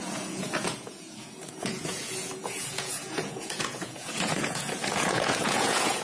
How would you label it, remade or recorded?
remade